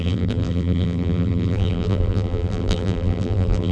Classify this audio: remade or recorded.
remade